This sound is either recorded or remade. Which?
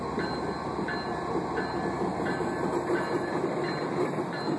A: recorded